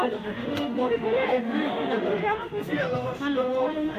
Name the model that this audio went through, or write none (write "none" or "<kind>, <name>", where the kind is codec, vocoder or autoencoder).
autoencoder, DAC-VAE